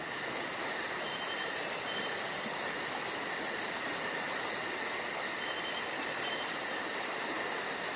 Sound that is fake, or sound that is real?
real